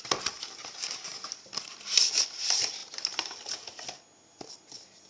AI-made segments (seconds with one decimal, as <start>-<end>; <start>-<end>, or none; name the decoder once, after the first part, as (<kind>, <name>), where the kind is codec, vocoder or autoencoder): none